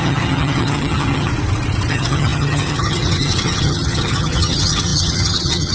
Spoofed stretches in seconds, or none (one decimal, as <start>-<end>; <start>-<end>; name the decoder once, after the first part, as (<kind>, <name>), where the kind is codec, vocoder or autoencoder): 0.0-1.3 (vocoder, HiFi-GAN); 1.9-5.7